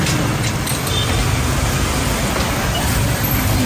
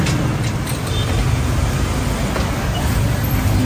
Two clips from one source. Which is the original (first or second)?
second